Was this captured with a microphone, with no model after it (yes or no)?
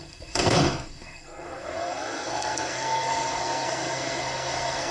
no